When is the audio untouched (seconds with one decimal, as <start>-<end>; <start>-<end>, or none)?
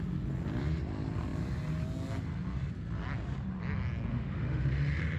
0.0-4.1